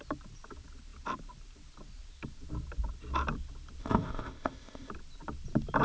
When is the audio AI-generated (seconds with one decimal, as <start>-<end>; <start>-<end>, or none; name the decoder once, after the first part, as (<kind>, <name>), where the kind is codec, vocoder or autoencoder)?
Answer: 3.8-4.9 (codec, ZipCodec)